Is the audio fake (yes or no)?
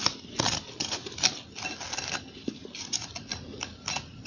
no